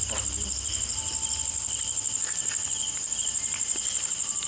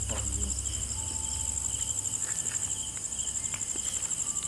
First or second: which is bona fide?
second